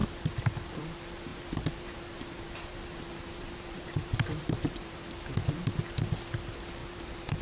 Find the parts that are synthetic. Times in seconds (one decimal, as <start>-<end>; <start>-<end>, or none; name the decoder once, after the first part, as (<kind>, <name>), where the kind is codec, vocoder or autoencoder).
0.0-0.8 (vocoder, BigVGAN v2); 1.3-5.7; 6.8-7.4